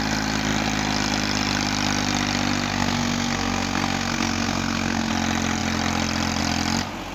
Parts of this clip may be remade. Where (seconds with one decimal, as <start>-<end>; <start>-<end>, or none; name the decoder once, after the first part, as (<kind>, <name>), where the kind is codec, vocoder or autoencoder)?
2.7-5.1 (codec, SNAC)